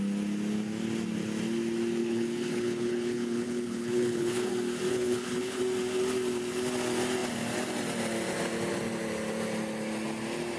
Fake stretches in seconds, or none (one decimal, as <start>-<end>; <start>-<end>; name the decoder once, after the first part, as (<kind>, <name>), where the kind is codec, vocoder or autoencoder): 2.0-4.5 (codec, HILCodec); 4.9-5.6